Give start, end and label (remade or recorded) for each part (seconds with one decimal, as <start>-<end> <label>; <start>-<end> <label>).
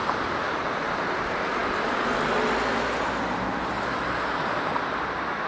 0.0-5.5 recorded